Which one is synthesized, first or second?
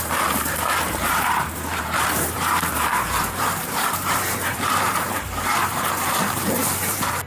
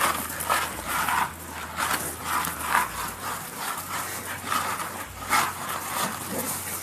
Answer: first